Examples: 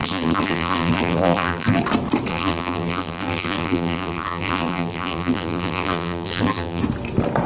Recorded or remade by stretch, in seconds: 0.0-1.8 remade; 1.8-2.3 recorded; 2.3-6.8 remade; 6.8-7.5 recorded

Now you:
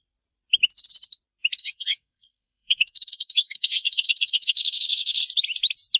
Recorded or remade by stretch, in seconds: 0.0-1.6 recorded; 1.6-5.2 remade; 5.2-6.0 recorded

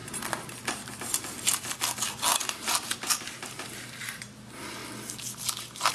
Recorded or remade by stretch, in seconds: 0.0-2.3 recorded; 2.3-4.2 remade; 4.2-5.9 recorded

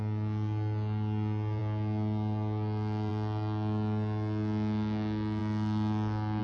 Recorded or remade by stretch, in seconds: 0.0-6.4 recorded